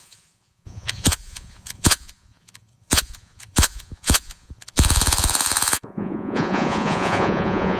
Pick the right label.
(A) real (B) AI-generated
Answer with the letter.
B